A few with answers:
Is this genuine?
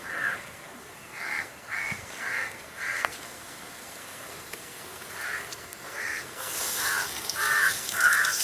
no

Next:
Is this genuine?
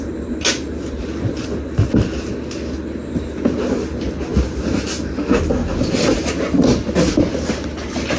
yes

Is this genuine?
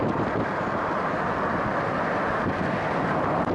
yes